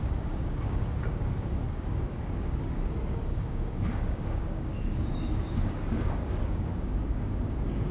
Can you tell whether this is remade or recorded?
remade